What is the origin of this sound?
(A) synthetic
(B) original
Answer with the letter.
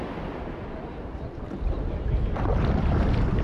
B